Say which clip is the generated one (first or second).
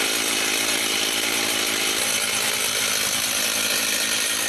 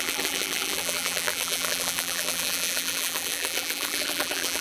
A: second